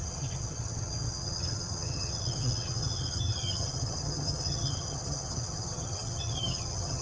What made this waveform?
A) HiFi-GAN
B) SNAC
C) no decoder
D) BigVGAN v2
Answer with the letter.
A